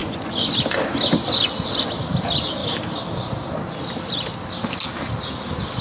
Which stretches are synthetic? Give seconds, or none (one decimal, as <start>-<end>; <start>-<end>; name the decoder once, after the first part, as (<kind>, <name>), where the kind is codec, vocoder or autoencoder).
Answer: 0.0-0.5 (vocoder, Vocos)